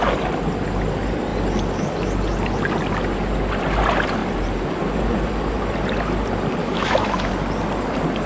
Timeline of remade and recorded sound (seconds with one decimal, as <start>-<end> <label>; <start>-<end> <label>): 0.0-6.6 recorded; 6.6-7.3 remade; 7.3-8.3 recorded